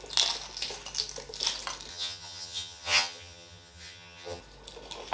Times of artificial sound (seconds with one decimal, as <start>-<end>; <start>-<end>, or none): 1.9-4.4